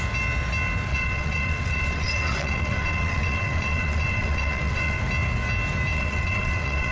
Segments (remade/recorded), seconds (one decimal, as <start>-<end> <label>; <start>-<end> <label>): 0.0-0.9 recorded; 0.9-5.0 remade; 5.0-5.9 recorded; 5.9-6.9 remade